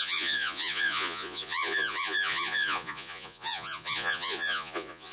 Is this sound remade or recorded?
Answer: remade